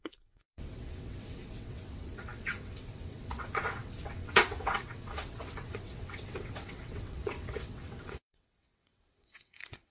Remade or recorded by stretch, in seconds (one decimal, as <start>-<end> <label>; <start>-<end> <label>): 0.0-9.9 remade